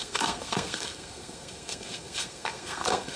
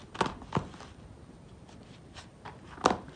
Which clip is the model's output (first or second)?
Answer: first